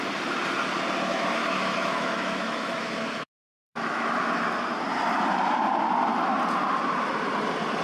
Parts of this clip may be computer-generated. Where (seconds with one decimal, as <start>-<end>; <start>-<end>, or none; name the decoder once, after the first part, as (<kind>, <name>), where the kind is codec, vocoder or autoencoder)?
1.1-4.3 (autoencoder, DAC-VAE)